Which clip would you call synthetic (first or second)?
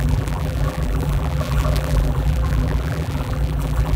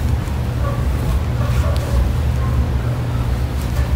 first